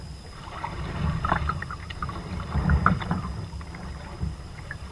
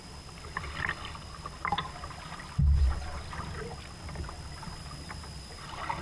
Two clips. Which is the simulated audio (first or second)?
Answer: first